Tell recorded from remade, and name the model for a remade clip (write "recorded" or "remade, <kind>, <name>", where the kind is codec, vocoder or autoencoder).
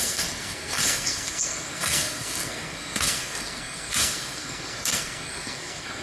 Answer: remade, codec, SNAC